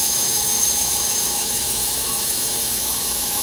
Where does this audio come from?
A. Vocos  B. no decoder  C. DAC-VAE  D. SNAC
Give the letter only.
C